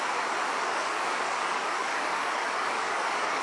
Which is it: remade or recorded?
remade